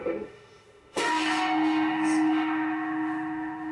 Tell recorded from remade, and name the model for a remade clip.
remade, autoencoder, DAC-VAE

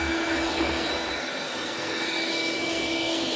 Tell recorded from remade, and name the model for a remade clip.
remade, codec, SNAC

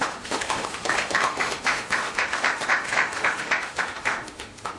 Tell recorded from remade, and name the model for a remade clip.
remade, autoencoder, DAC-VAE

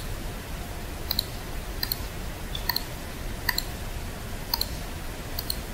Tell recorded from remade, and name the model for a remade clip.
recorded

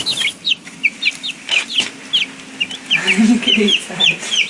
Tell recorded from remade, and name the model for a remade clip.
recorded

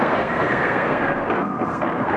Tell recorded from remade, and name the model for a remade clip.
remade, codec, SNAC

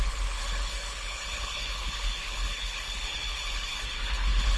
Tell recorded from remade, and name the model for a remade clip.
remade, codec, HILCodec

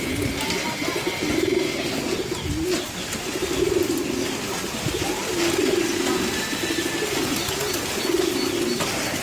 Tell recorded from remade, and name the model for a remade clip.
recorded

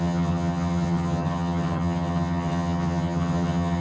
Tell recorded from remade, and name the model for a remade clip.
remade, vocoder, HiFi-GAN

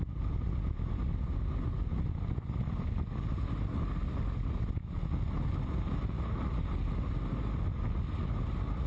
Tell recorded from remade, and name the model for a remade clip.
recorded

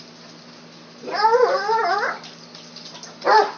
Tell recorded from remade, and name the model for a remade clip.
recorded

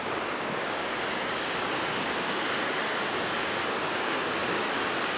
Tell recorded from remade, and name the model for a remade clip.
remade, codec, DAC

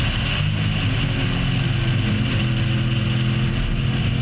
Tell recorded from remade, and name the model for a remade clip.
recorded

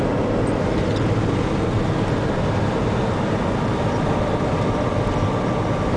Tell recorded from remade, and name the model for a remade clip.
recorded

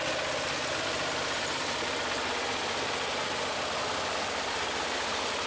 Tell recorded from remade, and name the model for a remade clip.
recorded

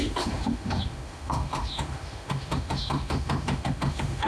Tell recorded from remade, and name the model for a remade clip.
remade, autoencoder, DAC-VAE